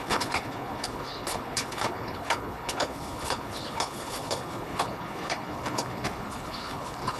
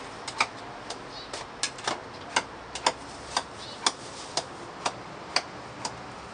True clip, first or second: second